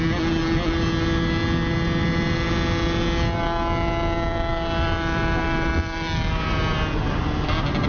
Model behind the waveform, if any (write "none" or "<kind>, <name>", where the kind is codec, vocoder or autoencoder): none